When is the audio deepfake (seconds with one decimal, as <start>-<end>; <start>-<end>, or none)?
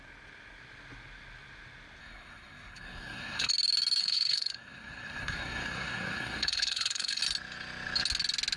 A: 2.0-3.5; 4.0-7.2